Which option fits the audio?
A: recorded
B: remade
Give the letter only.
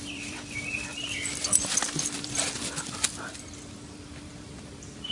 B